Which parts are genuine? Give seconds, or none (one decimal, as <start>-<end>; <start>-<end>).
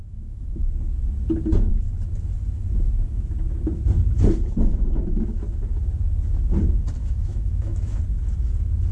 0.6-7.0; 8.0-8.9